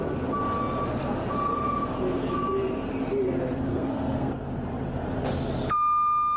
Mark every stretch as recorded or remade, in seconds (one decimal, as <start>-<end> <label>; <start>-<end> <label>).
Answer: 0.0-3.7 recorded; 3.7-4.3 remade; 4.3-6.4 recorded